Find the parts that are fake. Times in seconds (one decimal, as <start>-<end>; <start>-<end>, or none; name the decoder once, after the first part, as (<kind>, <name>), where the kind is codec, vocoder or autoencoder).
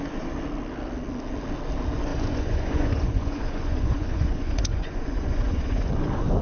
2.1-5.9 (vocoder, Vocos)